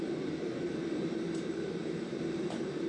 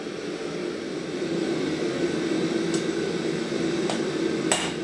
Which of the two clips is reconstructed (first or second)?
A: first